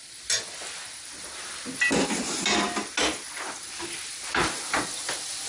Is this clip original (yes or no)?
yes